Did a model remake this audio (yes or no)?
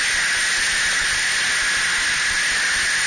no